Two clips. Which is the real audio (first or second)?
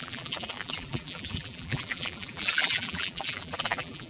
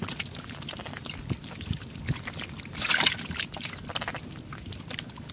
second